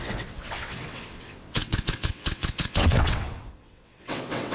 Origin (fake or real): fake